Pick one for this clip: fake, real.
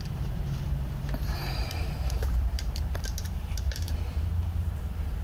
fake